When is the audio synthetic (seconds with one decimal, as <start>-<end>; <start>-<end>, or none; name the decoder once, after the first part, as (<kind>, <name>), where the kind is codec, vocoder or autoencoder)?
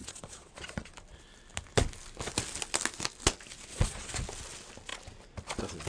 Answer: 0.0-0.9 (vocoder, Vocos); 3.7-4.2